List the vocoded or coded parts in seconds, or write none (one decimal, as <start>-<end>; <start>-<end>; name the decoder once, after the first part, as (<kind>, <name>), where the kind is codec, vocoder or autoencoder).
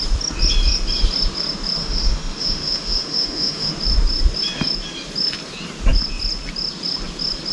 1.8-3.7 (autoencoder, DAC-VAE)